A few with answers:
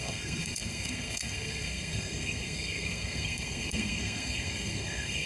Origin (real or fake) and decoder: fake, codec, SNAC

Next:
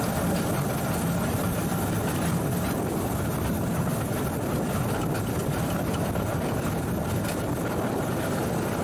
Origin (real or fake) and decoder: real